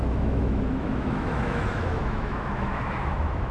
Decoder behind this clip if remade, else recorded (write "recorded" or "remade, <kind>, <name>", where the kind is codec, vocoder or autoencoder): remade, autoencoder, DAC-VAE